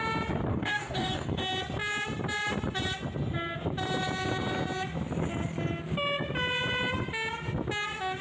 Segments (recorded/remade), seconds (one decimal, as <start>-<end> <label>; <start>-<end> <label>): 0.0-0.5 recorded; 0.5-1.4 remade; 1.4-8.2 recorded